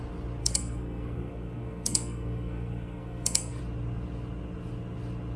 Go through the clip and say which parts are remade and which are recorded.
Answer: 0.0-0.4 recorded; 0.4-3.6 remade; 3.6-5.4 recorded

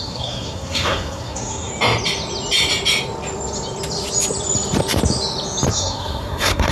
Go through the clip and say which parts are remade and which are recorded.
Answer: 0.0-1.7 remade; 1.7-5.7 recorded; 5.7-6.7 remade

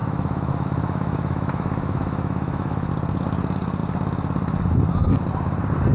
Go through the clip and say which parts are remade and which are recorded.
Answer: 0.0-2.9 remade; 2.9-5.9 recorded